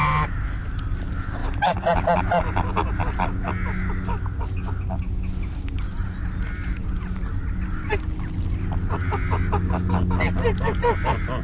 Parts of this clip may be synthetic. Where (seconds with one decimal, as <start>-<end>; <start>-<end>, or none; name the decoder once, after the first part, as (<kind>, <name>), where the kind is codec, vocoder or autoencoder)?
none